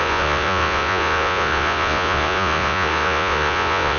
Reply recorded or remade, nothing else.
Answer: remade